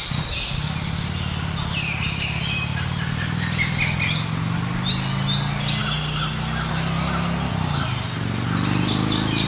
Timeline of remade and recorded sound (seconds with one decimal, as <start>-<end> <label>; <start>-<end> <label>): 0.0-9.5 recorded